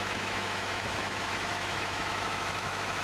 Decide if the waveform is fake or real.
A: fake